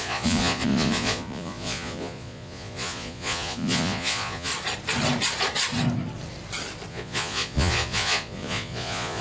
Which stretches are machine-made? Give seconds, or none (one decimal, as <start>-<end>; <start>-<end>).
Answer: 0.0-4.5; 6.9-9.2